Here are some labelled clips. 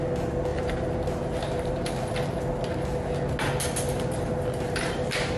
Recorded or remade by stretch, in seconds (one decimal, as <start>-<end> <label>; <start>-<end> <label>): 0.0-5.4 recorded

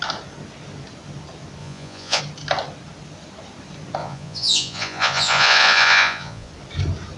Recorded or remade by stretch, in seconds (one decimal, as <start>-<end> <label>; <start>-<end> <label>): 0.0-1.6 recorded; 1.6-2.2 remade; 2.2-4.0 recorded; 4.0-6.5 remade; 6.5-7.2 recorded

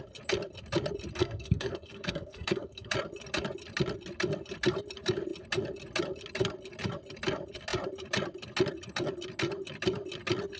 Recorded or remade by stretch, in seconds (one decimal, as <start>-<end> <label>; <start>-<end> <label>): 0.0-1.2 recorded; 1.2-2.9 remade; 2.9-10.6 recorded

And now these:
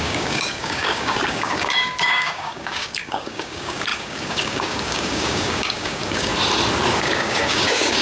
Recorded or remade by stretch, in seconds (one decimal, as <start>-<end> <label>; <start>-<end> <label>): 0.0-6.3 remade; 6.3-7.0 recorded; 7.0-8.0 remade